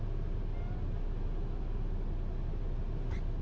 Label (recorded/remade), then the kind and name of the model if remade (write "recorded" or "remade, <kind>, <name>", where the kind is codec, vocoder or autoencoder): recorded